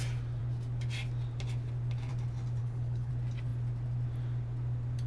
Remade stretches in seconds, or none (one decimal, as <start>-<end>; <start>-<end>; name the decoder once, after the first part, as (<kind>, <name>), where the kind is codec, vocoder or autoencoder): 2.6-3.1 (codec, HILCodec)